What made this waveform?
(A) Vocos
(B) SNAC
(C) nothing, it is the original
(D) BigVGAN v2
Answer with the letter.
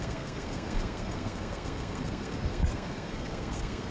B